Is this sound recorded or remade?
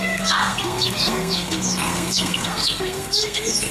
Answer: remade